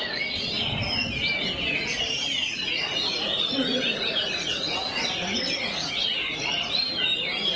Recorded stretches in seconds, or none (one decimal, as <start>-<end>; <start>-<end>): 0.0-2.2; 6.8-7.6